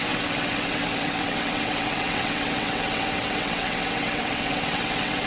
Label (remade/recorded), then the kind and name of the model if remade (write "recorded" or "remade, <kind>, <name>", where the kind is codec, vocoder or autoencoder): remade, vocoder, WaveNeXt